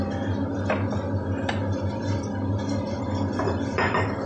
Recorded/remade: recorded